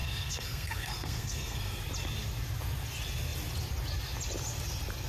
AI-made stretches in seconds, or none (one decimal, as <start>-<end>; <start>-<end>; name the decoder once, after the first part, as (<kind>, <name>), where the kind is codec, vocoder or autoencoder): 0.0-1.8 (codec, SNAC)